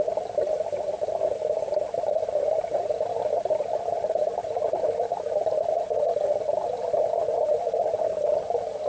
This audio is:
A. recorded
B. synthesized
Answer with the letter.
B